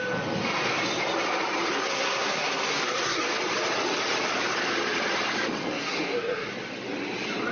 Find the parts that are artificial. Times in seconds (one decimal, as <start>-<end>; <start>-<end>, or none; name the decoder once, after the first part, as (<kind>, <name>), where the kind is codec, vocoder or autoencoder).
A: 1.7-3.2 (codec, SNAC); 5.6-6.5